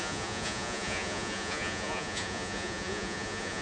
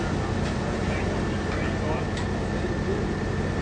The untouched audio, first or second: second